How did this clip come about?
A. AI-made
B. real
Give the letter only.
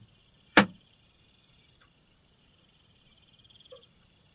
A